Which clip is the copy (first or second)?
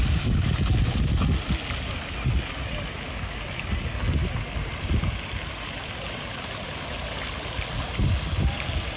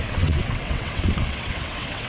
second